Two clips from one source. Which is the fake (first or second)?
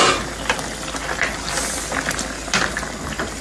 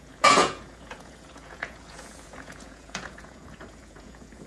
second